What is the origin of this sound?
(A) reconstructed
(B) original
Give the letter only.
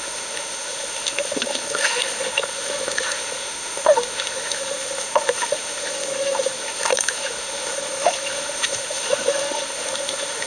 A